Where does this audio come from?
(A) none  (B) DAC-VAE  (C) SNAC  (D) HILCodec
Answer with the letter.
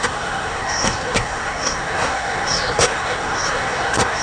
C